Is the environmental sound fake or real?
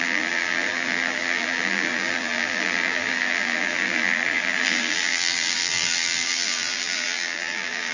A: fake